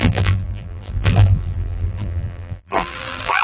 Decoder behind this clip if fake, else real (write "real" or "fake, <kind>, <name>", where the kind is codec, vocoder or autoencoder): fake, vocoder, BigVGAN v2